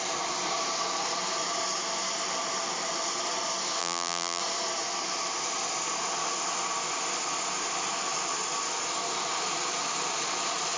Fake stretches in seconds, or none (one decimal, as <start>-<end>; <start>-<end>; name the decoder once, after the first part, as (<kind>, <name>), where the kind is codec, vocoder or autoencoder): 3.8-4.4 (vocoder, BigVGAN v2)